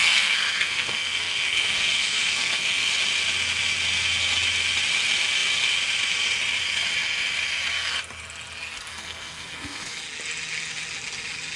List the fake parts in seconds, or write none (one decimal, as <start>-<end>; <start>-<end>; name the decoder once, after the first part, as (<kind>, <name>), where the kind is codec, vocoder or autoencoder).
0.0-2.9 (codec, SNAC); 8.9-10.0